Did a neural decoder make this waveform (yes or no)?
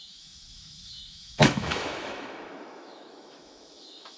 yes